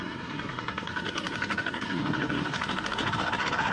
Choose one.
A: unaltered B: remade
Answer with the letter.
B